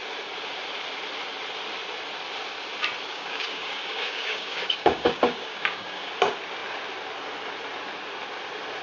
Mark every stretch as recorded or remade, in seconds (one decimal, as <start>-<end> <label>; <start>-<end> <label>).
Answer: 0.0-3.1 recorded; 3.1-6.1 remade; 6.1-8.8 recorded